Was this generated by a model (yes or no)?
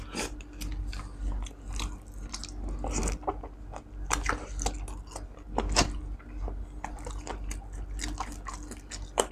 no